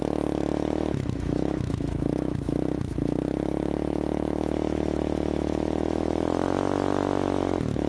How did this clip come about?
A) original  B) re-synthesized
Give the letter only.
B